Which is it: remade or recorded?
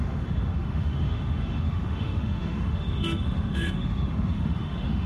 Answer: remade